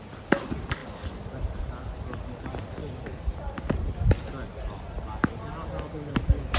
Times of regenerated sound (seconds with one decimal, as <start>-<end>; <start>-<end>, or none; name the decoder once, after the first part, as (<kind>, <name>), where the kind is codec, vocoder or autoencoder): 0.8-1.6 (vocoder, BigVGAN v2); 2.8-4.2